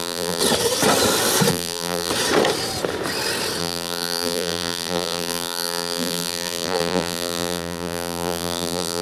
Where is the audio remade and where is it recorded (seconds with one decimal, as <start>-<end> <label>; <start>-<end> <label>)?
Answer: 0.0-0.4 remade; 0.4-1.5 recorded; 1.5-2.1 remade; 2.1-3.6 recorded; 3.6-9.0 remade

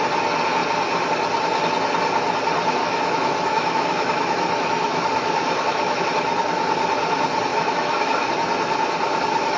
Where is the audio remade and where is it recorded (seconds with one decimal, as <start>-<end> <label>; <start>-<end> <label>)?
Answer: 0.0-2.8 recorded; 2.8-6.0 remade; 6.0-7.5 recorded; 7.5-8.3 remade; 8.3-9.6 recorded

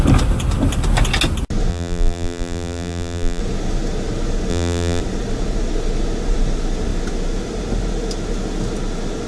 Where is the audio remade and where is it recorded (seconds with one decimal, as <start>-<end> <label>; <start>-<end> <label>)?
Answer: 0.0-1.7 recorded; 1.7-3.4 remade; 3.4-4.5 recorded; 4.5-5.0 remade; 5.0-9.3 recorded

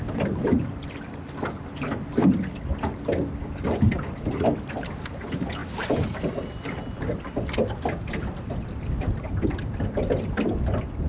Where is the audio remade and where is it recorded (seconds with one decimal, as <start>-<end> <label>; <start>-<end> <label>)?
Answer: 0.0-2.2 recorded; 2.2-2.8 remade; 2.8-5.6 recorded; 5.6-8.8 remade; 8.8-11.1 recorded

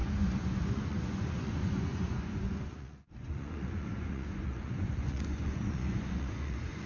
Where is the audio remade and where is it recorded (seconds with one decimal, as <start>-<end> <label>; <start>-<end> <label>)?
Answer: 0.0-6.9 remade

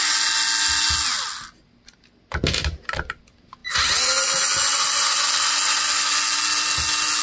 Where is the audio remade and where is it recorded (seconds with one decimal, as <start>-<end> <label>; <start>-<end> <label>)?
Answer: 0.0-7.2 recorded